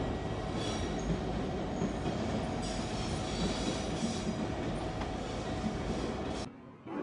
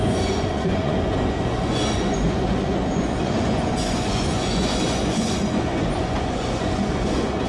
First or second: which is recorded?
first